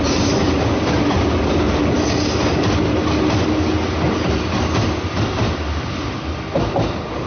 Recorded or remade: recorded